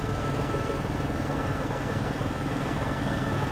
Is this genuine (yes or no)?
no